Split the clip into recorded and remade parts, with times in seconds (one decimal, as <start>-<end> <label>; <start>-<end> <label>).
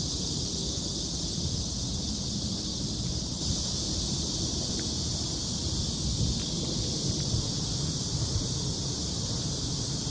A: 0.0-0.6 remade; 0.6-1.2 recorded; 1.2-2.7 remade; 2.7-7.9 recorded; 7.9-10.1 remade